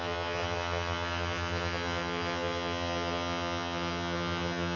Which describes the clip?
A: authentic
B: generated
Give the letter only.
B